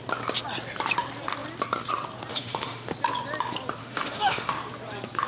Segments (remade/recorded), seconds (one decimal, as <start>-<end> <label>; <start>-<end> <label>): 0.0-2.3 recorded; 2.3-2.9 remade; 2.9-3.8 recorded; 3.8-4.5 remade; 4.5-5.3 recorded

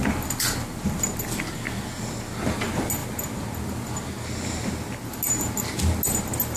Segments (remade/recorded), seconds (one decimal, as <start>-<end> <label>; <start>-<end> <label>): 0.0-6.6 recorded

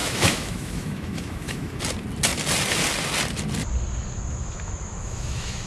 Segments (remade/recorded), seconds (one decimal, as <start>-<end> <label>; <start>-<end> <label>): 0.0-1.8 remade; 1.8-4.4 recorded; 4.4-5.7 remade

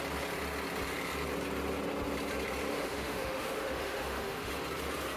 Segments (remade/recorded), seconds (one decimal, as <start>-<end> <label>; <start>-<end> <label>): 0.0-2.7 recorded; 2.7-4.5 remade; 4.5-5.2 recorded

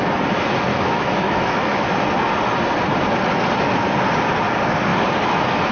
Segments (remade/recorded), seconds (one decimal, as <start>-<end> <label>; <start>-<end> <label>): 0.0-0.7 recorded; 0.7-1.9 remade; 1.9-5.7 recorded

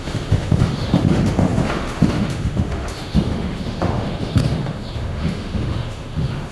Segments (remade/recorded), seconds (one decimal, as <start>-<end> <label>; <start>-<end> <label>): 0.0-6.5 remade

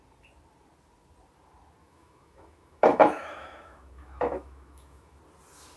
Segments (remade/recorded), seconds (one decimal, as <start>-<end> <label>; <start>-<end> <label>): 0.0-1.8 recorded; 1.8-5.2 remade; 5.2-5.8 recorded

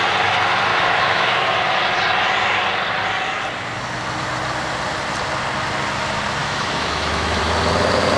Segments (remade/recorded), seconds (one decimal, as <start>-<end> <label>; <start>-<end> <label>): 0.0-0.7 recorded; 0.7-1.4 remade; 1.4-6.4 recorded; 6.4-7.4 remade; 7.4-8.2 recorded